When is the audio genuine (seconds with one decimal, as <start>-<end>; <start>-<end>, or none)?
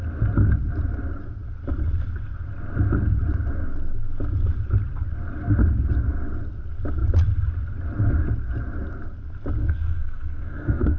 0.0-9.6